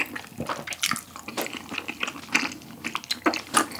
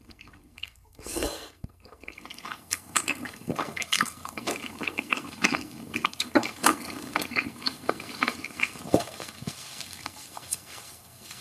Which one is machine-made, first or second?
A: second